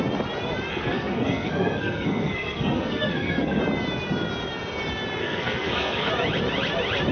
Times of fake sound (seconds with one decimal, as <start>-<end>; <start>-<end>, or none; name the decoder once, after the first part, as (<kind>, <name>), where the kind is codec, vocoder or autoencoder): 0.7-3.6 (codec, SNAC); 5.2-6.1